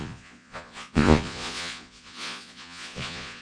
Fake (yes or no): yes